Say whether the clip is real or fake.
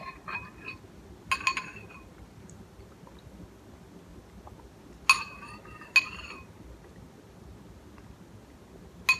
real